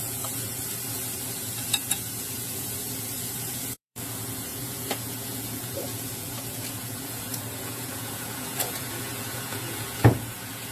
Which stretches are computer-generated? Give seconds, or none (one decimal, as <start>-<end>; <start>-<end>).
0.0-0.6; 1.4-10.7